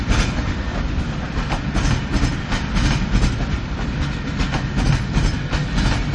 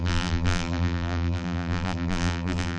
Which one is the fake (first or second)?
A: second